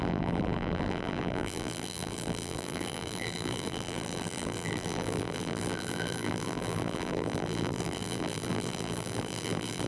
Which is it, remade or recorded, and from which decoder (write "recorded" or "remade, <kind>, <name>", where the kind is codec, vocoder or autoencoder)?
remade, vocoder, BigVGAN v2